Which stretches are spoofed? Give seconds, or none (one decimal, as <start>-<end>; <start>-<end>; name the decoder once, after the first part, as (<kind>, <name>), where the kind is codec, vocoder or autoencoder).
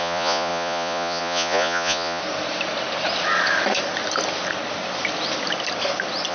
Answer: 0.0-2.2 (vocoder, Vocos)